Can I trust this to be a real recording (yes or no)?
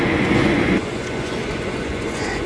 no